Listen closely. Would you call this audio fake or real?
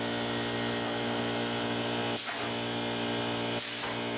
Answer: real